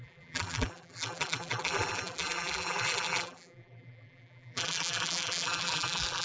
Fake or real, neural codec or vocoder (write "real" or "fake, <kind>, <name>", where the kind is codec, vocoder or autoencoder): fake, vocoder, BigVGAN v2